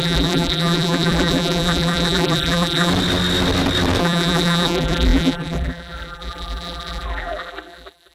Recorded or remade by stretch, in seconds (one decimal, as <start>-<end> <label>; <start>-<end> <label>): 0.0-2.9 remade; 2.9-4.0 recorded; 4.0-8.1 remade